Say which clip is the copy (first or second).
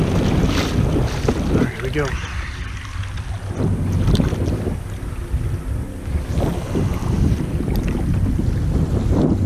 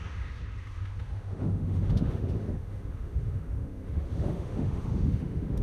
second